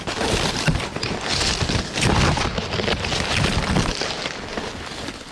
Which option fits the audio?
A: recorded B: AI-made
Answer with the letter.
A